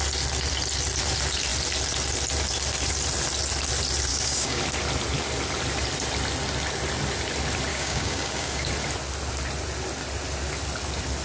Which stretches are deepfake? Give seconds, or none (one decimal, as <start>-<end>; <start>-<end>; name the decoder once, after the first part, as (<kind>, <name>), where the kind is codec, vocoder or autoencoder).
4.1-4.6 (codec, DAC); 7.7-8.7